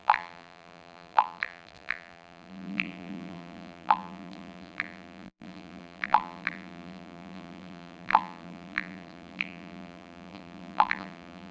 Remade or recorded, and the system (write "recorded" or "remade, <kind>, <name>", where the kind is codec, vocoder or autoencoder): remade, vocoder, BigVGAN v2